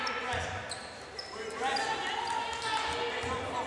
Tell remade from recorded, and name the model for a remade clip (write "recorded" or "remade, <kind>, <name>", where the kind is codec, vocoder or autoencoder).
recorded